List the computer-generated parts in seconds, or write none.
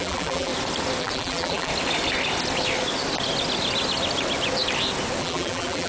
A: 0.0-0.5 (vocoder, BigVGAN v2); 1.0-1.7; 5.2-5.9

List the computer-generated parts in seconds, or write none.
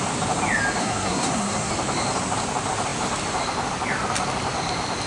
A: 0.8-1.7 (codec, SNAC)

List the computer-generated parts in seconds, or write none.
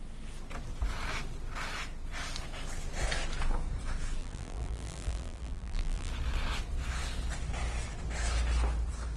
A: 4.2-6.1 (vocoder, BigVGAN v2)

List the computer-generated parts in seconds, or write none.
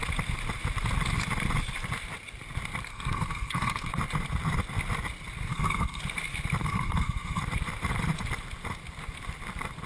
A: 2.9-3.9 (codec, SNAC); 5.5-6.0; 6.6-7.4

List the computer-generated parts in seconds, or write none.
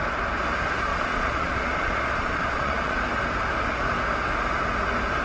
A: 0.9-3.0 (vocoder, Vocos)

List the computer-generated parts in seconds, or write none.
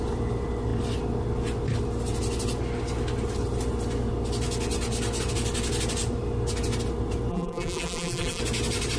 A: 7.3-8.4 (vocoder, BigVGAN v2)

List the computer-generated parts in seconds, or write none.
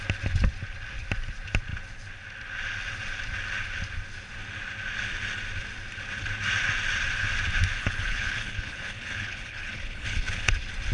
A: 7.8-10.5 (codec, HILCodec)